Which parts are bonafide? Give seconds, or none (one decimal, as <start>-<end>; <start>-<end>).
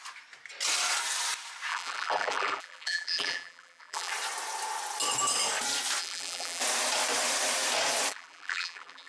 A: 0.0-1.7; 4.1-6.0; 6.6-8.1